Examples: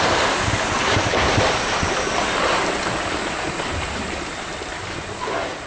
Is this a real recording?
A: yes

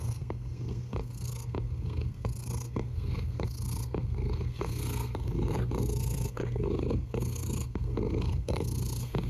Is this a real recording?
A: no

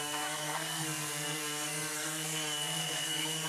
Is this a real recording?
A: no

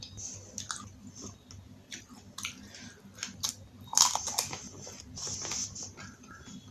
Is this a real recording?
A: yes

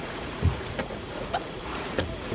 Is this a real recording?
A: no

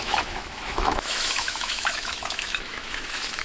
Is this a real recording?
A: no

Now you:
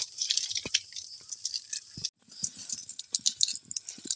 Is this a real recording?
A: yes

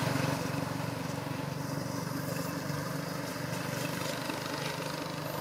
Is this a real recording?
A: yes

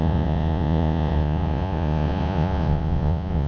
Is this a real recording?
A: no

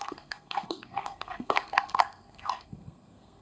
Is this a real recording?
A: no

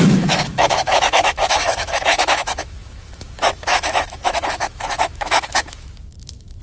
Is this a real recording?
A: no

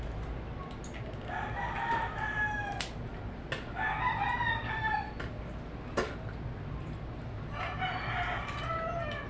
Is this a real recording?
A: yes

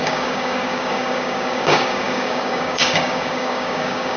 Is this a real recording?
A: no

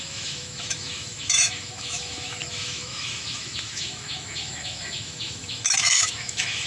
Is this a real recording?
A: no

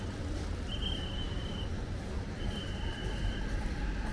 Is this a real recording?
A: yes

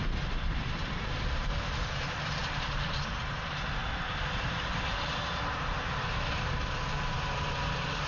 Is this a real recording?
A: no